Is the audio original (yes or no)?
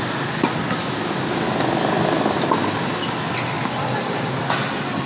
yes